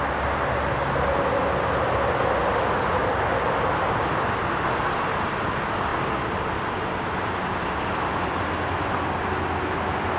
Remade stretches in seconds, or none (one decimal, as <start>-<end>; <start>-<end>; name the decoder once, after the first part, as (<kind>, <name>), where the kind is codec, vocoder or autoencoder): none